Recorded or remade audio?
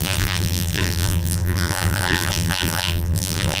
remade